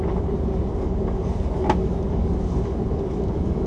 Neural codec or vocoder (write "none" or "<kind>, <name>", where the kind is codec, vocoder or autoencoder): codec, DAC